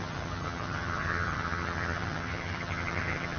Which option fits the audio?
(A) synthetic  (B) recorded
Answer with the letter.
A